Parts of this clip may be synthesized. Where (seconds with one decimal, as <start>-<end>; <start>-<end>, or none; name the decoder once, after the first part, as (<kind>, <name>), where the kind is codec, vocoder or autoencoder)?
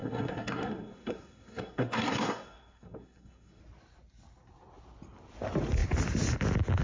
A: 0.0-3.6 (codec, SNAC)